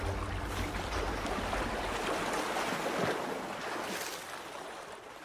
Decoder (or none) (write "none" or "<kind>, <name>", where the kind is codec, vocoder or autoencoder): none